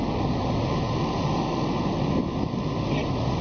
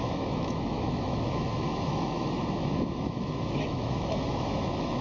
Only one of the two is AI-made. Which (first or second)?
second